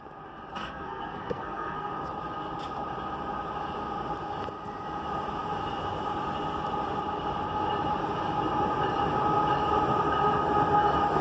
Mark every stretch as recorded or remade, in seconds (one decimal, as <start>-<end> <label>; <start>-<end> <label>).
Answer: 0.0-0.5 recorded; 0.5-1.9 remade; 1.9-11.2 recorded